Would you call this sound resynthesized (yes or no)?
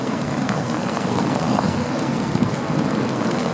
yes